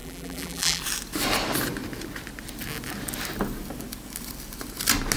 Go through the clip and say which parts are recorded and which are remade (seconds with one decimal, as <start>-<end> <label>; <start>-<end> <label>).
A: 0.0-0.8 remade; 0.8-5.2 recorded